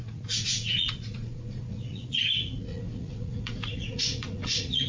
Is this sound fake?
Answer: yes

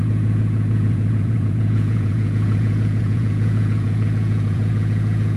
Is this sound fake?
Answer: yes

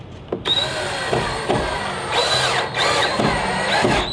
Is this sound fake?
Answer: no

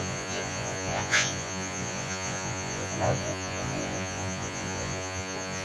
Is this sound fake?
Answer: yes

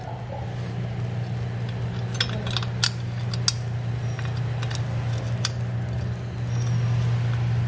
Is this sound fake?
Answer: no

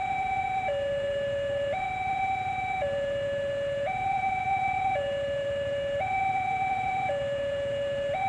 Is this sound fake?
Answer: yes